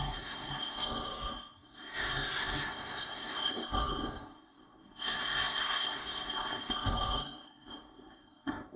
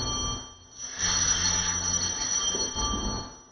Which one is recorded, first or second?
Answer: second